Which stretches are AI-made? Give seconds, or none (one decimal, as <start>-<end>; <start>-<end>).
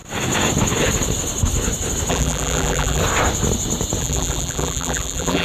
2.1-3.0; 4.0-5.4